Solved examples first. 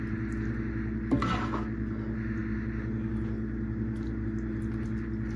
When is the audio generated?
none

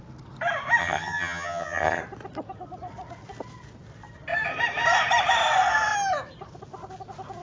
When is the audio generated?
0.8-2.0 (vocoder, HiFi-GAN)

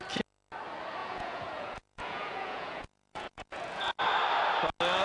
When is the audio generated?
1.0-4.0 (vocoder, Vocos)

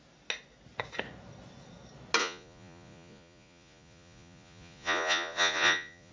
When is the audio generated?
2.2-6.1 (vocoder, Vocos)

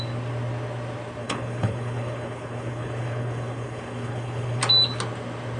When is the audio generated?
1.2-4.6 (codec, HILCodec)

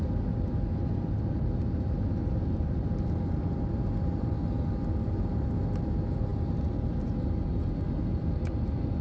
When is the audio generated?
none

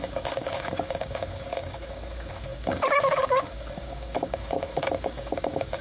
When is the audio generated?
0.0-5.8 (codec, DAC)

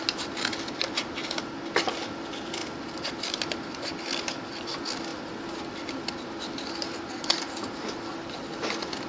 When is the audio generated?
none